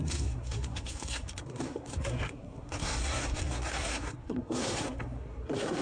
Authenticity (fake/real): fake